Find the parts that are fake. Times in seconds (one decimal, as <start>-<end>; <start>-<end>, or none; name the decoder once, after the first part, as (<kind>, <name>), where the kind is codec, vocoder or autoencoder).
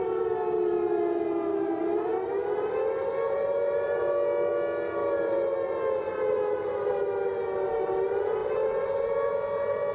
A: none